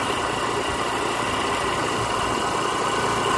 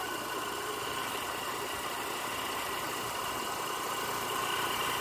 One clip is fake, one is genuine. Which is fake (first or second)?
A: second